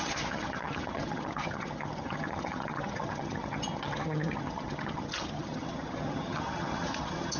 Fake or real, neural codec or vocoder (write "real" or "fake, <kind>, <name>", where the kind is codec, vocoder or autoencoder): fake, vocoder, HiFi-GAN